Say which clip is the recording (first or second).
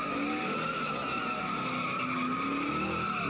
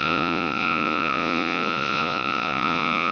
first